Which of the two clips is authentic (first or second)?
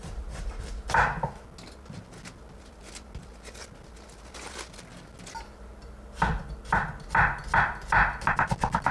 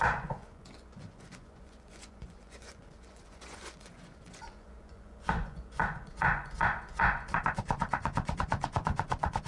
first